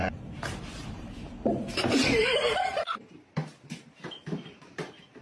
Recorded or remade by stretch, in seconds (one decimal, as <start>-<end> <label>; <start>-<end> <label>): 0.0-5.2 remade

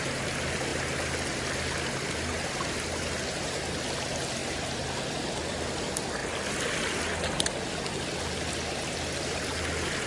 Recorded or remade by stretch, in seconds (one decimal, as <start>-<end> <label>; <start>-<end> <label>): 0.0-4.4 recorded; 4.4-5.6 remade; 5.6-10.1 recorded

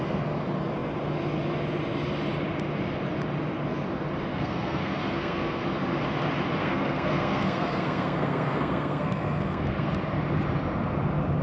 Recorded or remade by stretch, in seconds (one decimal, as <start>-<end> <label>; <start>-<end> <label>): 0.0-4.3 recorded; 4.3-5.6 remade; 5.6-6.6 recorded; 6.6-9.9 remade; 9.9-11.4 recorded

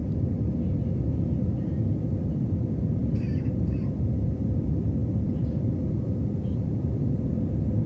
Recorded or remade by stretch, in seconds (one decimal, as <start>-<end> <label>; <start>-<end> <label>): 0.0-0.6 remade; 0.6-3.0 recorded; 3.0-4.6 remade; 4.6-5.0 recorded; 5.0-7.0 remade; 7.0-7.9 recorded

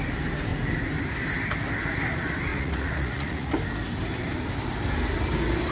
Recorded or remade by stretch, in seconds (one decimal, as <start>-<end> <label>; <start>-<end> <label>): 0.0-2.5 recorded; 2.5-3.5 remade; 3.5-5.7 recorded

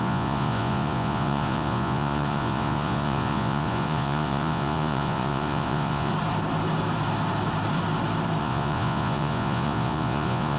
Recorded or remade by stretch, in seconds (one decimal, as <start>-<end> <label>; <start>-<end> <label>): 0.0-6.1 remade; 6.1-8.4 recorded; 8.4-10.6 remade

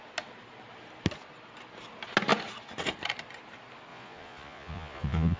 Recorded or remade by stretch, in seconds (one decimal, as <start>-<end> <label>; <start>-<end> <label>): 0.0-3.9 recorded; 3.9-5.4 remade